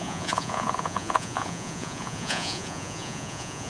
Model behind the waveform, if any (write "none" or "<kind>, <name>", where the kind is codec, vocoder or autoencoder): vocoder, Vocos